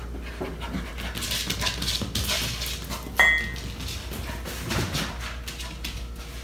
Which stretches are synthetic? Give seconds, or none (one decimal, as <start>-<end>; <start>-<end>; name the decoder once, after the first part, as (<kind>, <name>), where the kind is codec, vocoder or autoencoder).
none